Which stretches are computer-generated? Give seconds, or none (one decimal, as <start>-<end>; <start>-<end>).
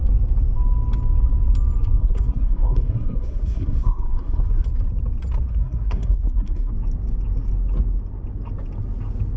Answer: 2.0-4.4; 5.5-6.7